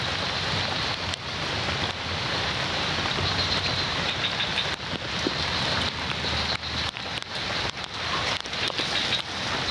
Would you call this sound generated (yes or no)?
yes